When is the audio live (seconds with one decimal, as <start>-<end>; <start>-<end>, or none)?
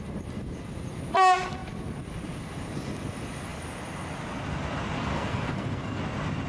0.0-5.0; 6.0-6.5